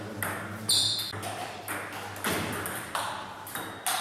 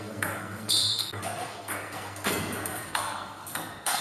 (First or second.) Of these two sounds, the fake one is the second